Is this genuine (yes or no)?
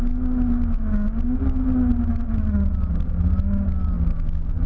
yes